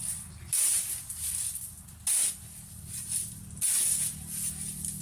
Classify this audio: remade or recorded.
recorded